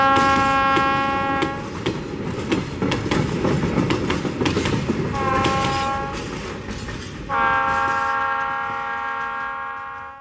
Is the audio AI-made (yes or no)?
no